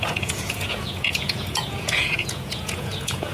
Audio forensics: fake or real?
fake